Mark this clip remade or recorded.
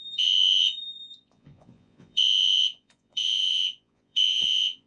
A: remade